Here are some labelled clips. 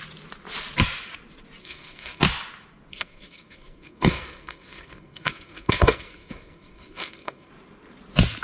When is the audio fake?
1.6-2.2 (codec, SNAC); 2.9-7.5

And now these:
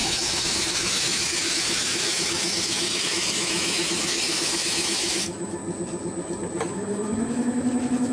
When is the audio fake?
0.0-5.6 (autoencoder, DAC-VAE); 6.6-8.1

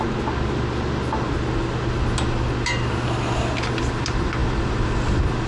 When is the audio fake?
none